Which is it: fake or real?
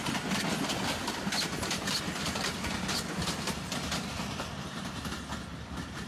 real